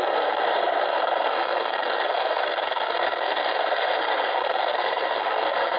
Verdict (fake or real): fake